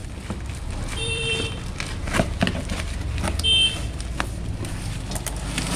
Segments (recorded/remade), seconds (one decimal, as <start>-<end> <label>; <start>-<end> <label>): 0.0-1.6 remade; 1.6-5.8 recorded

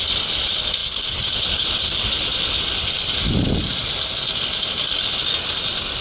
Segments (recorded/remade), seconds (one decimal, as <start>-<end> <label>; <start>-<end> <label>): 0.0-6.0 recorded

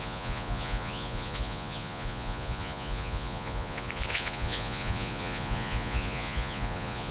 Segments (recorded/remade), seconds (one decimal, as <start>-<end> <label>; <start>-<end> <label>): 0.0-7.1 remade

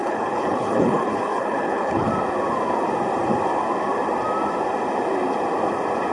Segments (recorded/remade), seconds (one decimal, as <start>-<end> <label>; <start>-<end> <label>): 0.0-2.1 remade; 2.1-6.1 recorded

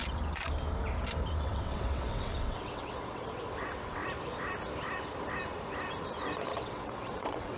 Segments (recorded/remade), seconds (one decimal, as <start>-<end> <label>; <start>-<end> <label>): 0.0-1.3 recorded; 1.3-4.0 remade; 4.0-6.5 recorded; 6.5-7.6 remade

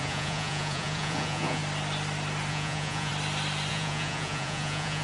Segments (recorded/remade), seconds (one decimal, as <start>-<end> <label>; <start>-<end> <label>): 0.0-1.6 remade; 1.6-2.5 recorded; 2.5-3.1 remade; 3.1-3.7 recorded; 3.7-5.0 remade